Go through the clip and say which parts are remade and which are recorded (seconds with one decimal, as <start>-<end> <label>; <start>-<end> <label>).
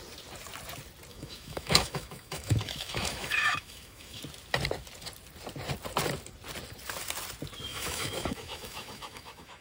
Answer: 0.0-1.1 recorded; 1.1-4.2 remade; 4.2-7.7 recorded; 7.7-9.6 remade